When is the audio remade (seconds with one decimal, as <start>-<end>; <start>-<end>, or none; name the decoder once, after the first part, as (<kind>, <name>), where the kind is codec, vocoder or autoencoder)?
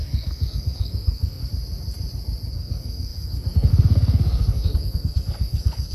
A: 0.0-1.4 (codec, SNAC); 2.5-5.9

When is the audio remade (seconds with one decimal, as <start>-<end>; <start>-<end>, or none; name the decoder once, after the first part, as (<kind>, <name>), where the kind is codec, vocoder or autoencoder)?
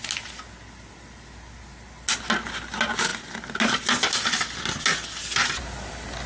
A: none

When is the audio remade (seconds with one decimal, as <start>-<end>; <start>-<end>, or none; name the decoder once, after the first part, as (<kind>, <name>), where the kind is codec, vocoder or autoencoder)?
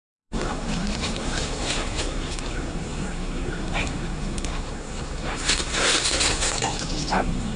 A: 0.0-7.6 (codec, SNAC)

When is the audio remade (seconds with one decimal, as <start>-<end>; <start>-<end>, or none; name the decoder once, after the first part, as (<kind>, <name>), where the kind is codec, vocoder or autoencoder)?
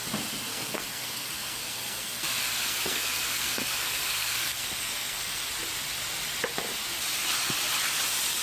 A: 0.5-5.5 (codec, SNAC)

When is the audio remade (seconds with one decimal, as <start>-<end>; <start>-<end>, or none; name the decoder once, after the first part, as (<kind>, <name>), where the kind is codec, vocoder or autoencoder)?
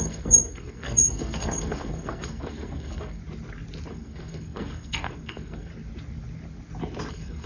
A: 0.0-3.2 (codec, SNAC); 3.9-5.7; 7.1-7.5